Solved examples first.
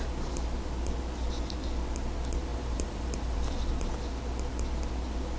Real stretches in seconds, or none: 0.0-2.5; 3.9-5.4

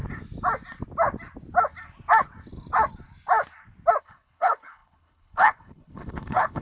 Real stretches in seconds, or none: 0.0-4.0

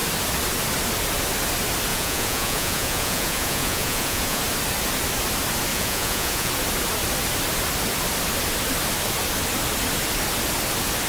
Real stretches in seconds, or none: 0.0-1.9; 4.4-5.7; 6.5-11.1

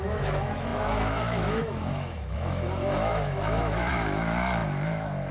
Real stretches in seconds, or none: none

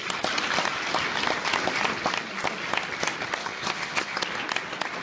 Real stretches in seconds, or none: 0.0-3.4; 4.2-5.0

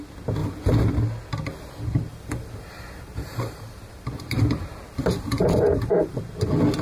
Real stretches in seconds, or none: 0.0-0.4; 0.9-2.1; 6.2-6.8

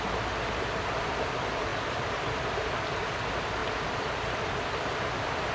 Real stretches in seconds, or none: 0.0-1.7; 2.3-3.6

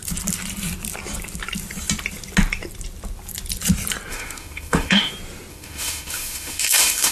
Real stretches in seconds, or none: 0.0-4.1; 5.1-5.5